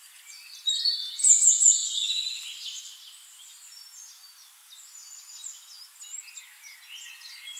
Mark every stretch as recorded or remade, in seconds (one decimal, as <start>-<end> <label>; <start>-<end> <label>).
0.0-7.6 recorded